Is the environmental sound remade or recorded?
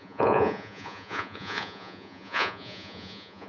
remade